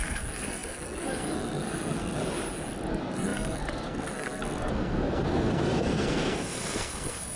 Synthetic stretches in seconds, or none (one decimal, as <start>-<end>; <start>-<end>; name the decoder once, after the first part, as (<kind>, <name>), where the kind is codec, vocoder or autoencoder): 0.0-2.2 (codec, SNAC); 2.9-7.4